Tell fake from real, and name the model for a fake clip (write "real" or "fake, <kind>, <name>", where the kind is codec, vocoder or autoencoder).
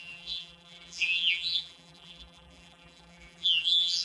fake, vocoder, BigVGAN v2